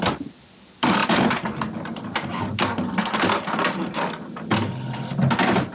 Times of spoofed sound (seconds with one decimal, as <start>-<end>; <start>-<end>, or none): none